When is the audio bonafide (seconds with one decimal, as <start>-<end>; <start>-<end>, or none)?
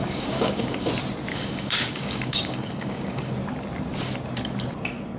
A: 0.9-1.3; 3.3-5.2